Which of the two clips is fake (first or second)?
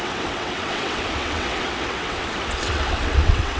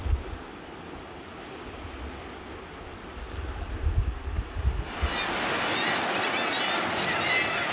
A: first